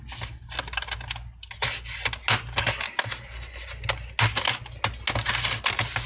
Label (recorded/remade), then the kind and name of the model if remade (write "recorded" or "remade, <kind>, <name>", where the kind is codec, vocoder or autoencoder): recorded